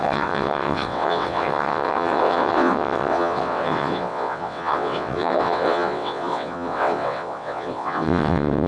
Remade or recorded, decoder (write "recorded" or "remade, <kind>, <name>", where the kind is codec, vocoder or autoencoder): remade, vocoder, WaveNeXt